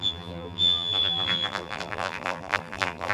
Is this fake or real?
fake